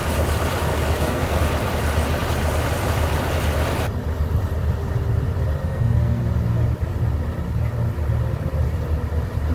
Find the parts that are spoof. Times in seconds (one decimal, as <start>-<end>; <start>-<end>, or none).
0.7-1.4; 5.6-6.2